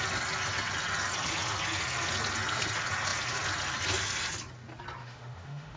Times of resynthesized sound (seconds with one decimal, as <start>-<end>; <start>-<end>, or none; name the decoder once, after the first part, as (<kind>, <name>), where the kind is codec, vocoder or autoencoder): 5.0-5.8 (autoencoder, DAC-VAE)